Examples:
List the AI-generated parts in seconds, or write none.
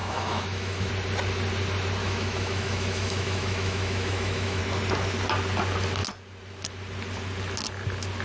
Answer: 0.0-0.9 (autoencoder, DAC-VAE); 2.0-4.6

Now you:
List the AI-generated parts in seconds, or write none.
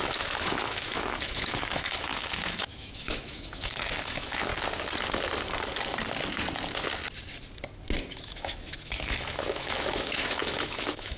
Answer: 0.0-4.5 (autoencoder, DAC-VAE); 8.1-11.2